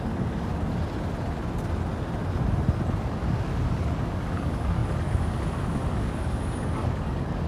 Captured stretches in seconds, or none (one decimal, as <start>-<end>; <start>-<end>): 0.5-3.1